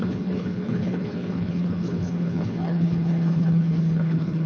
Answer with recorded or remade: remade